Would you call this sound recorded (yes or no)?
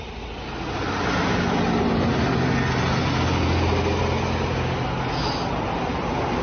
yes